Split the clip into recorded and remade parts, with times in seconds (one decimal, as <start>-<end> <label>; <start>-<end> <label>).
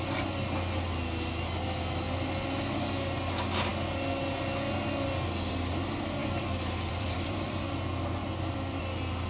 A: 0.0-6.2 recorded; 6.2-7.7 remade; 7.7-8.2 recorded; 8.2-8.8 remade; 8.8-9.3 recorded